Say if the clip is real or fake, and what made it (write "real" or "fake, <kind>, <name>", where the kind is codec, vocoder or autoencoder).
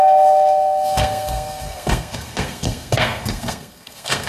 fake, codec, SNAC